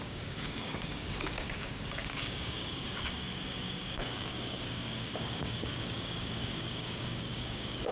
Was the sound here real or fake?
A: fake